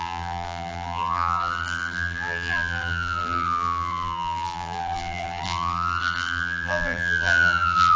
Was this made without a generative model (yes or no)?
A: no